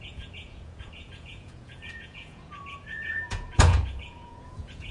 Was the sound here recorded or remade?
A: remade